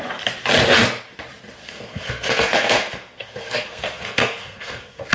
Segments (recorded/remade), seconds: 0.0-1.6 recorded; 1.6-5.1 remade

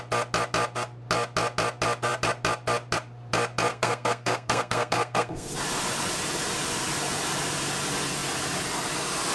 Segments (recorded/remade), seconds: 0.0-3.7 recorded; 3.7-5.5 remade; 5.5-9.3 recorded

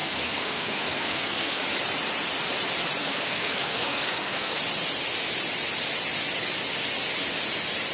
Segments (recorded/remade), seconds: 0.0-1.6 remade; 1.6-3.0 recorded; 3.0-4.6 remade; 4.6-7.9 recorded

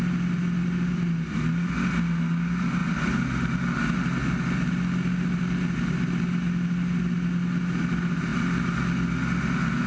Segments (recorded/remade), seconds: 0.0-9.9 recorded